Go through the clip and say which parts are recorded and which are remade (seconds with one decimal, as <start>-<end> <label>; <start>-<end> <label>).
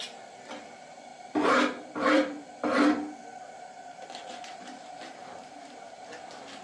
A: 0.0-6.6 remade